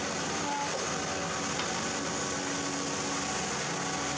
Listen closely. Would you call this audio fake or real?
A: real